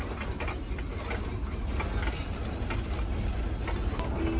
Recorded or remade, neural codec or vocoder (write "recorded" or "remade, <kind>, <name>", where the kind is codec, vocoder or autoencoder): recorded